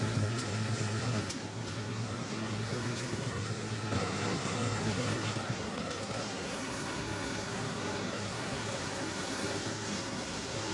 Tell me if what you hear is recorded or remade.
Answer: remade